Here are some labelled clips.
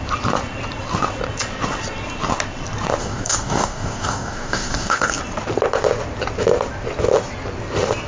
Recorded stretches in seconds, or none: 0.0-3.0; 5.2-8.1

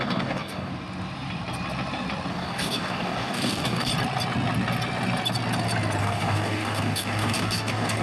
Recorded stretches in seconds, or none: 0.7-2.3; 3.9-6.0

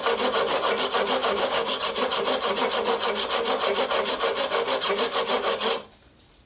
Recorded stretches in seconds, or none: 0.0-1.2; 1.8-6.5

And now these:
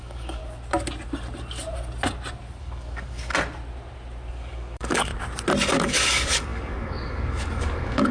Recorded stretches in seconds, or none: 0.4-2.6; 3.3-4.3; 5.1-5.7